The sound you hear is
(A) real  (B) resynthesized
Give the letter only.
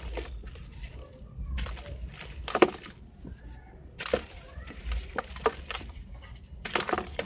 A